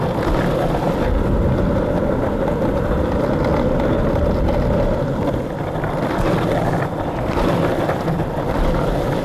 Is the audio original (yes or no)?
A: yes